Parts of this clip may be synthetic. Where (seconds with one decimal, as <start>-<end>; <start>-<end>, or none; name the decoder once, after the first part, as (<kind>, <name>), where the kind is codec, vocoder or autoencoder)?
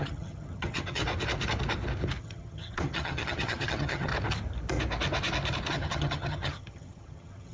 0.0-1.0 (vocoder, HiFi-GAN); 2.2-4.1; 5.7-7.5